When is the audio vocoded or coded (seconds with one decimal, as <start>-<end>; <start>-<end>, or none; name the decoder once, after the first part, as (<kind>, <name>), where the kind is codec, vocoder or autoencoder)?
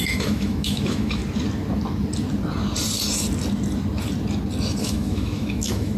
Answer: 0.0-1.2 (autoencoder, DAC-VAE); 4.8-6.0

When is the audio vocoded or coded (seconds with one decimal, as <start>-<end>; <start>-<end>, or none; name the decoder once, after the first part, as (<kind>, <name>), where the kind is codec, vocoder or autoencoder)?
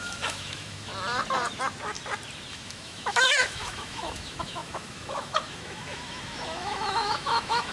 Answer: 0.0-0.9 (autoencoder, DAC-VAE); 2.5-7.7